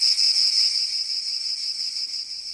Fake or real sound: real